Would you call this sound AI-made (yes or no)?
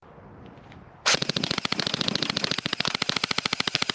no